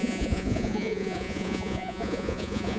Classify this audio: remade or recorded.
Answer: remade